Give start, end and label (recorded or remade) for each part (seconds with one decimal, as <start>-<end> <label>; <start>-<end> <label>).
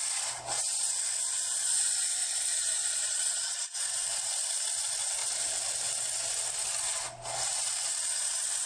0.0-2.2 recorded; 2.2-3.8 remade; 3.8-8.7 recorded